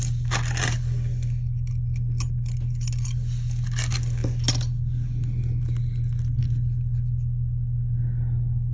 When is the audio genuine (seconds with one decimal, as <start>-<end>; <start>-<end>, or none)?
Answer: 0.0-8.7

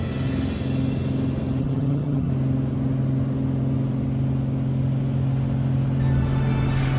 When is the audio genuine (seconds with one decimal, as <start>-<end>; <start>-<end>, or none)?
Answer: 0.0-1.6; 2.3-7.0

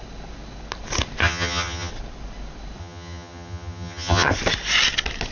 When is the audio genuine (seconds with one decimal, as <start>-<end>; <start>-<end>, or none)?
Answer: 0.0-1.2; 1.9-2.8; 4.3-5.3

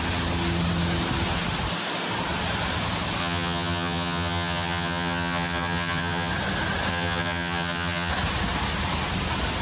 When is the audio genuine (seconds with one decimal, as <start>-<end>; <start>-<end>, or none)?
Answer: 0.0-3.2; 6.3-6.9; 8.1-9.6

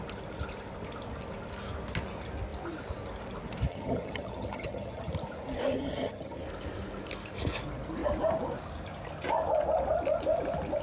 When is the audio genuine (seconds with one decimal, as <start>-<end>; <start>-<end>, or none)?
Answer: 0.0-3.7; 5.1-5.7; 6.4-10.8